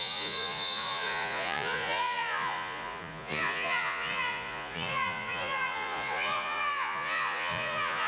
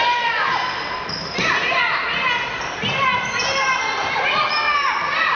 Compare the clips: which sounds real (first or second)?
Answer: second